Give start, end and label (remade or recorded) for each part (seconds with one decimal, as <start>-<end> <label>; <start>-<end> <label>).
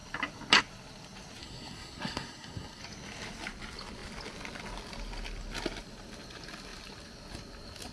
0.0-1.4 recorded; 1.4-2.8 remade; 2.8-7.9 recorded